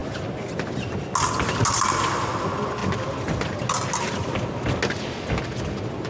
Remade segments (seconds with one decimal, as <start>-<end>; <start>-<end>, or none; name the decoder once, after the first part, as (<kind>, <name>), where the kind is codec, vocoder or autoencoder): none